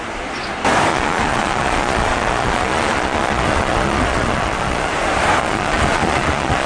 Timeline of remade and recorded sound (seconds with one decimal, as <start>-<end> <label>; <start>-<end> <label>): 0.0-0.9 recorded; 0.9-4.9 remade; 4.9-5.4 recorded; 5.4-6.7 remade